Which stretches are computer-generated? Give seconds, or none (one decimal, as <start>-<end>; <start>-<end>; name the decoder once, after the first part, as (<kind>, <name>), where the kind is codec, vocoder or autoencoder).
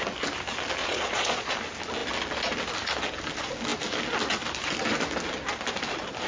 0.8-1.5 (vocoder, Vocos)